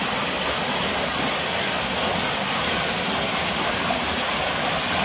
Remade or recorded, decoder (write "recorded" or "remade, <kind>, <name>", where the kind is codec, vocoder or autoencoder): recorded